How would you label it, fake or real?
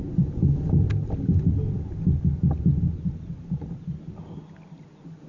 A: real